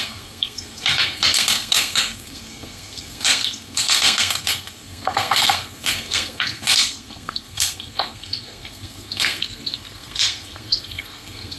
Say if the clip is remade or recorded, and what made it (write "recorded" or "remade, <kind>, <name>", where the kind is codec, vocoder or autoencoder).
remade, codec, SNAC